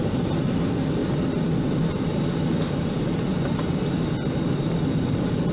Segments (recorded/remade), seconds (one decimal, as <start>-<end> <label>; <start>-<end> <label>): 0.0-5.5 recorded